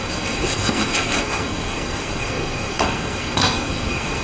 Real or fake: fake